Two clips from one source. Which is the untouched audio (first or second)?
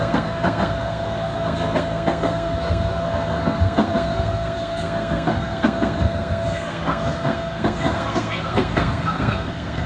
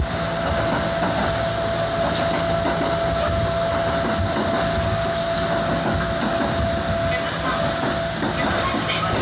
second